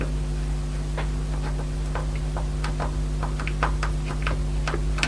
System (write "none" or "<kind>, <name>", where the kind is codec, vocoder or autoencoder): none